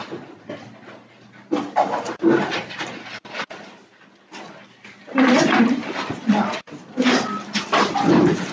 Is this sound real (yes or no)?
yes